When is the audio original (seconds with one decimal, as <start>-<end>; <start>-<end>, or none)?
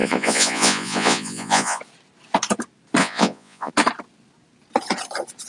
1.8-3.0; 3.7-5.5